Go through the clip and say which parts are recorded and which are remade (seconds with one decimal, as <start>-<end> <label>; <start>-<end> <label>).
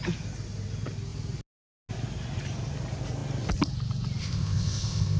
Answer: 0.0-4.2 recorded; 4.2-5.2 remade